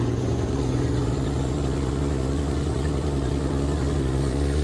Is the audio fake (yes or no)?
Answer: yes